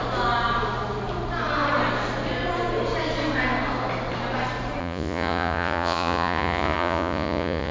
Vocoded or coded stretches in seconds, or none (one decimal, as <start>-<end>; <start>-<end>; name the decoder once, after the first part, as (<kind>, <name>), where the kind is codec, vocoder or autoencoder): 4.8-7.7 (vocoder, Vocos)